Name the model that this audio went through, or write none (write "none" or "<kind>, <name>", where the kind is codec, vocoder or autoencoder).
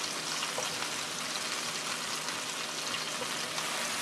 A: none